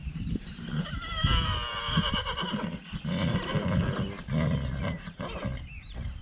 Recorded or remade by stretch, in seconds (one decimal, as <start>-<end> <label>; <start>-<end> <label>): 0.0-0.9 remade; 0.9-6.2 recorded